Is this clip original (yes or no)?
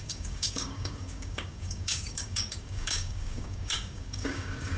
no